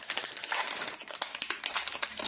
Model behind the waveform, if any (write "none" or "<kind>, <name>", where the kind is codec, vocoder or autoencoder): none